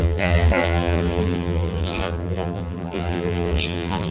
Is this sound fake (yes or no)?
yes